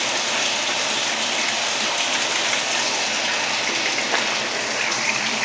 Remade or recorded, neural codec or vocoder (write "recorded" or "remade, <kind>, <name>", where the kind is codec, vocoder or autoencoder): recorded